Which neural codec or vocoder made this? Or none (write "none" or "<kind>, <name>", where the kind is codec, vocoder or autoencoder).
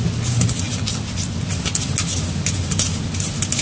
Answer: none